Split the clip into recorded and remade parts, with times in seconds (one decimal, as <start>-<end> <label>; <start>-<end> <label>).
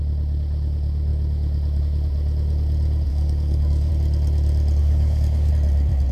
0.0-3.1 recorded; 3.1-3.9 remade; 3.9-4.8 recorded; 4.8-5.5 remade; 5.5-6.1 recorded